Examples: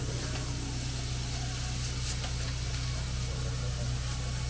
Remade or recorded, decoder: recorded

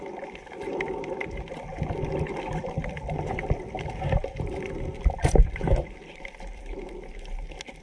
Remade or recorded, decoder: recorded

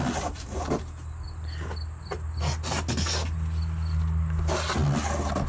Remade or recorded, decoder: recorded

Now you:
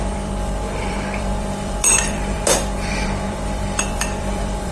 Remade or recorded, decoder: remade, vocoder, BigVGAN v2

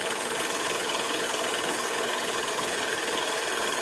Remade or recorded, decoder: remade, codec, HILCodec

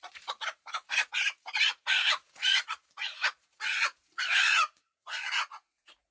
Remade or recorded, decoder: remade, vocoder, Vocos